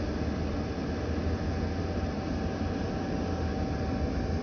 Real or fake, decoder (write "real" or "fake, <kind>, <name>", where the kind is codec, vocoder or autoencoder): real